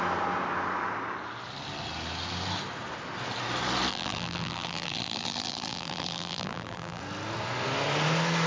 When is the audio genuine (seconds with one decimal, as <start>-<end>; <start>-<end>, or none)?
0.0-3.9; 7.0-8.5